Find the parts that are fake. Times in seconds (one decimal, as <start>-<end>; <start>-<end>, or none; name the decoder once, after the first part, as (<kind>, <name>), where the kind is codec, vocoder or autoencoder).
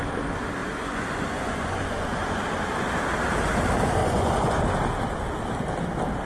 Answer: 0.6-2.4 (vocoder, Vocos); 4.0-4.6